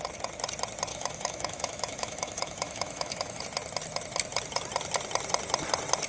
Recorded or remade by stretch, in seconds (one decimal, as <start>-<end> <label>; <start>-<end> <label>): 0.0-0.9 recorded; 0.9-3.4 remade; 3.4-6.1 recorded